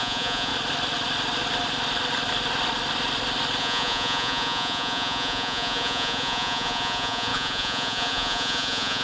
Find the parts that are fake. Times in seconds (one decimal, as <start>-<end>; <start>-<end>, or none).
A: 0.0-0.5; 3.6-9.0